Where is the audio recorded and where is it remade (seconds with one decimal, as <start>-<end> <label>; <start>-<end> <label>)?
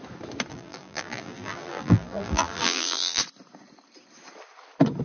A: 0.0-0.5 recorded; 0.5-3.2 remade; 3.2-5.0 recorded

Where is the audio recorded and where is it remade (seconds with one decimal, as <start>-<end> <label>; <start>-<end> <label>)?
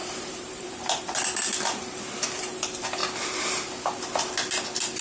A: 0.0-1.2 remade; 1.2-5.0 recorded